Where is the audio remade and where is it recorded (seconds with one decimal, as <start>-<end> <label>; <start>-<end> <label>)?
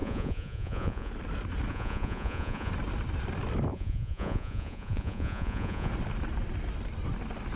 0.0-1.1 remade; 1.1-1.7 recorded; 1.7-2.7 remade; 2.7-3.7 recorded; 3.7-5.9 remade; 5.9-7.6 recorded